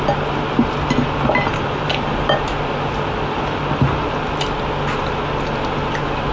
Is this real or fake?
real